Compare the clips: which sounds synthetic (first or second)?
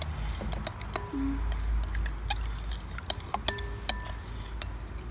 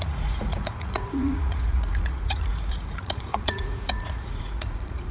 second